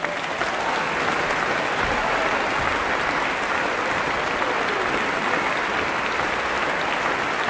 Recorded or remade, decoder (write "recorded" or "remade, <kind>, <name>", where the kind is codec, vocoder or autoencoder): recorded